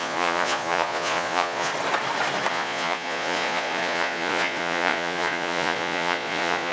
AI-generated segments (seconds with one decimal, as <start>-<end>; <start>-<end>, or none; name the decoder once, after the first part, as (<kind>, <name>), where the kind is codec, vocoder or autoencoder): 0.0-1.7 (vocoder, Vocos); 2.5-6.7